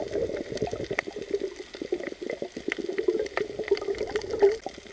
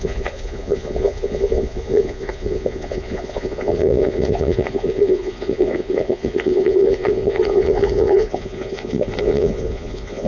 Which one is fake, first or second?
second